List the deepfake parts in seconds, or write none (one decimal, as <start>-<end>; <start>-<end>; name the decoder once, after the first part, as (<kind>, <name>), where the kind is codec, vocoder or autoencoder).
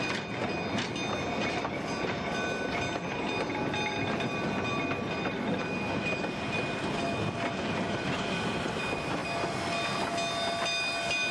none